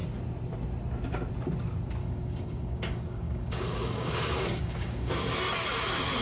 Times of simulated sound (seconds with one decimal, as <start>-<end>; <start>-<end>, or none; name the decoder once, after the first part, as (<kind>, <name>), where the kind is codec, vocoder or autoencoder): 2.0-5.1 (codec, DAC)